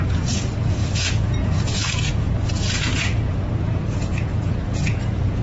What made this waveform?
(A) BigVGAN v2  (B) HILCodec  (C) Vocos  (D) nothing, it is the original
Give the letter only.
C